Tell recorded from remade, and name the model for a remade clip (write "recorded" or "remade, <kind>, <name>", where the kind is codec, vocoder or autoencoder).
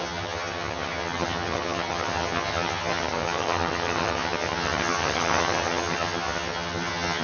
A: remade, vocoder, HiFi-GAN